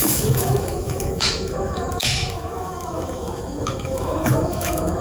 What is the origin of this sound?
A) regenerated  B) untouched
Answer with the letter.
A